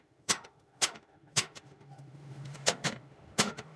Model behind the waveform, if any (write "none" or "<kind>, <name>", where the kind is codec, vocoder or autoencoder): autoencoder, DAC-VAE